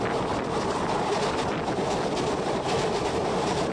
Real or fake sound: real